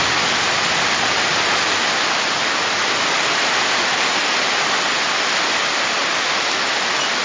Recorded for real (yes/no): yes